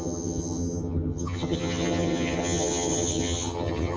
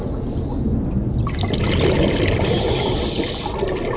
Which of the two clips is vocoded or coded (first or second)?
first